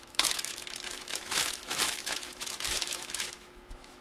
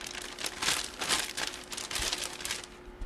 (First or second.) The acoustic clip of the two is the second